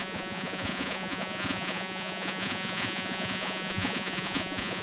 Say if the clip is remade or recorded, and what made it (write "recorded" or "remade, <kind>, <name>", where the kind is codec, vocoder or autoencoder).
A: remade, vocoder, Vocos